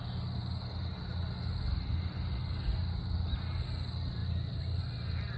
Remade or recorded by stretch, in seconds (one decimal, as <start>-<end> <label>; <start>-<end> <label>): 0.0-5.4 recorded